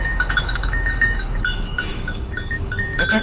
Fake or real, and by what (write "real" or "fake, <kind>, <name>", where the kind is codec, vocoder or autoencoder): fake, codec, DAC